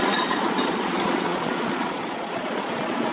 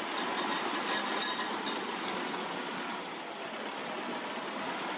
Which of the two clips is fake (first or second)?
first